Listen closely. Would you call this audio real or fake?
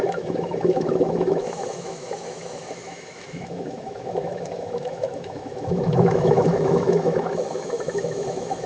fake